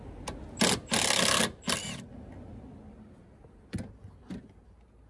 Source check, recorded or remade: recorded